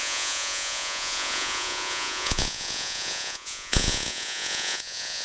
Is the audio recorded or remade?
remade